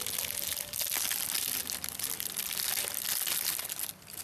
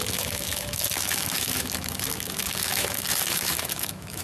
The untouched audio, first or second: first